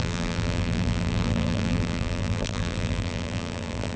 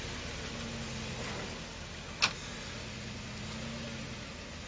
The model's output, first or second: first